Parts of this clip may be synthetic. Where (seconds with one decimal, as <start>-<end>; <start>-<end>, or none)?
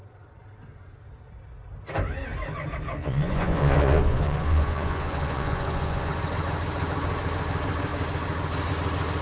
3.0-6.1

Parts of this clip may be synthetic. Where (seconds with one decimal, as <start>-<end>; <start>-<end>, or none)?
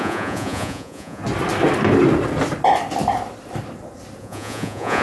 0.0-1.2; 4.2-5.0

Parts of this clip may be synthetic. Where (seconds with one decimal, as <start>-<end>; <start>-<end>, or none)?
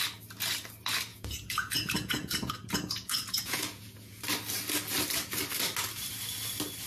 1.1-4.2